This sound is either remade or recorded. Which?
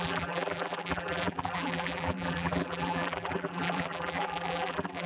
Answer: remade